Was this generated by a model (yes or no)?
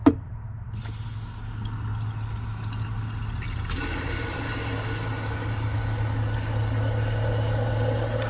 no